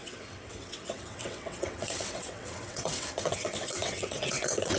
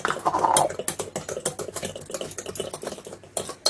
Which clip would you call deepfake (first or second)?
first